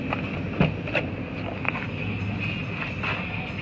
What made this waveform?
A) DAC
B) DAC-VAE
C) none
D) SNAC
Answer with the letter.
C